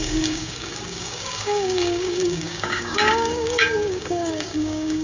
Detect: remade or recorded remade